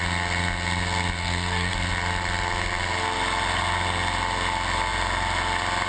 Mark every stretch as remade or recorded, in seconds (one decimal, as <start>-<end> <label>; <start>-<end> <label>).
0.0-1.2 recorded; 1.2-1.7 remade; 1.7-5.9 recorded